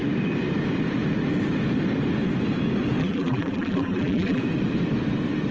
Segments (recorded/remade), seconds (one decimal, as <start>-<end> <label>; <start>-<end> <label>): 0.0-3.0 recorded; 3.0-4.4 remade; 4.4-5.5 recorded